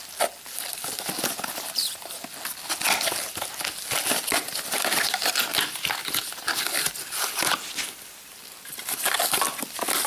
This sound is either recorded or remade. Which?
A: recorded